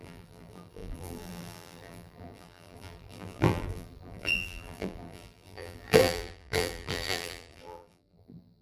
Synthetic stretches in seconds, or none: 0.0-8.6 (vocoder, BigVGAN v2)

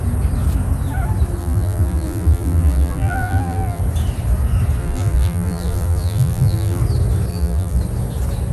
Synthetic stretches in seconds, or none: 1.4-3.8 (vocoder, BigVGAN v2); 4.8-6.8; 7.3-7.8

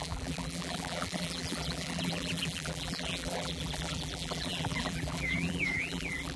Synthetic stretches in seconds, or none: 0.0-6.4 (vocoder, BigVGAN v2)

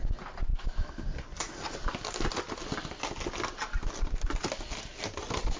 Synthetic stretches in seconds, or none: none

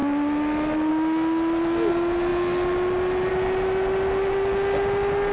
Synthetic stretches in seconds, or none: none

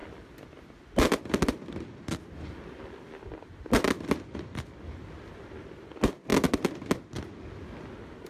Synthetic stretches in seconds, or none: none